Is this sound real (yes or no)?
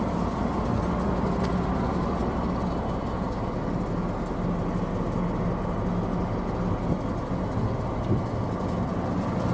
yes